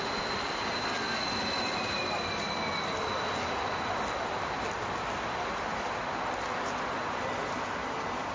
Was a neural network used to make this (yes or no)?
no